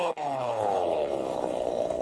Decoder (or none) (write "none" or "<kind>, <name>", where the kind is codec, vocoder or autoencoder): codec, HILCodec